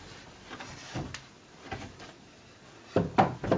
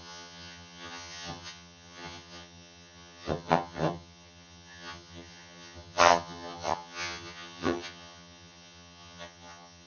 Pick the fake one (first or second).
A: second